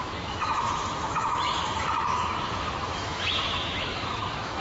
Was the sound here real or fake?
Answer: fake